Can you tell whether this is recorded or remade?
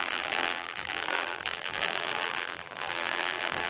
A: remade